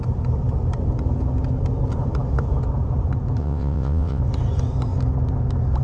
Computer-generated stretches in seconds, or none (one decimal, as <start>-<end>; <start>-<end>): 3.4-4.2